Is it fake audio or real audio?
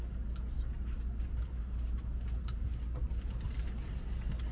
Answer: real